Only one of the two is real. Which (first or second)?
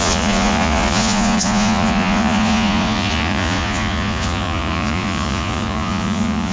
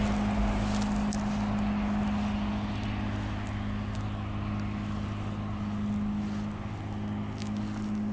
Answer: second